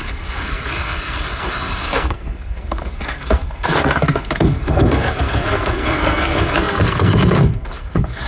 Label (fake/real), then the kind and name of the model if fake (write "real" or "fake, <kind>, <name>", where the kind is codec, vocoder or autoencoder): fake, codec, SNAC